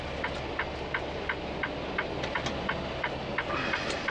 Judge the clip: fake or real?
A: real